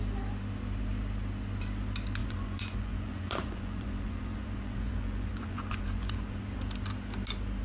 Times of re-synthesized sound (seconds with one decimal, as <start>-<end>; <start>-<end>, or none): 2.2-6.4